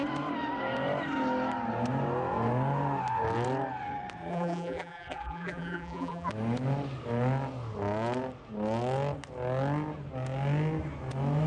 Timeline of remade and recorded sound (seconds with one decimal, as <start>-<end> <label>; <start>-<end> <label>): 0.0-4.3 recorded; 4.3-6.3 remade; 6.3-11.5 recorded